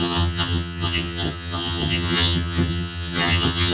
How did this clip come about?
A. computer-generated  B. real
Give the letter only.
A